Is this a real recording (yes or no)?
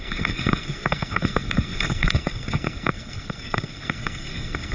no